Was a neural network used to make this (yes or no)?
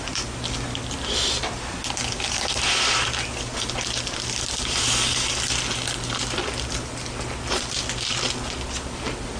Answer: no